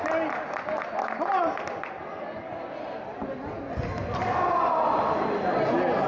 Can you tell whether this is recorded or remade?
recorded